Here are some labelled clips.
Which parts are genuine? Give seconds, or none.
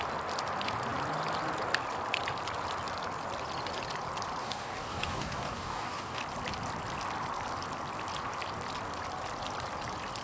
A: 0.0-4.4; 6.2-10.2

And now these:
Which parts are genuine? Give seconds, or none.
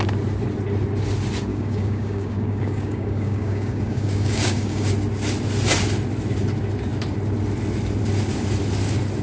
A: 0.0-1.5; 4.9-9.2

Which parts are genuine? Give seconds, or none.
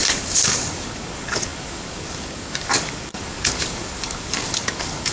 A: none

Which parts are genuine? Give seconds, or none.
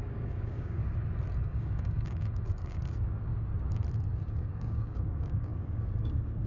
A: 0.8-1.4; 3.3-4.3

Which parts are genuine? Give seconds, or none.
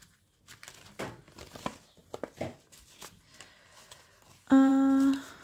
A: 0.0-5.4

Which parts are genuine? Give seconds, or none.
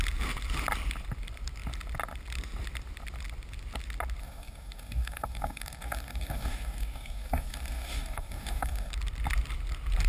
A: 0.0-4.2; 8.9-10.1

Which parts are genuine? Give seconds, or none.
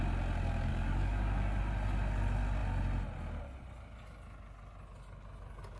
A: 0.0-0.7; 1.6-5.8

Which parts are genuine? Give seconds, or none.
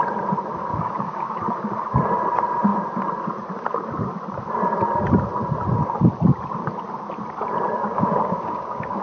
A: 0.0-0.7; 1.4-7.8